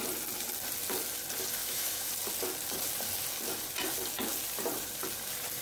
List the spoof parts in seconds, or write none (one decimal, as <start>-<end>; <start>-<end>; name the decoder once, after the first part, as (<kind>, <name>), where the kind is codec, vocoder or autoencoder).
1.6-2.1 (autoencoder, DAC-VAE)